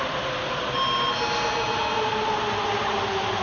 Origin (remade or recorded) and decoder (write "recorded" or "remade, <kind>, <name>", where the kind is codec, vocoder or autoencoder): recorded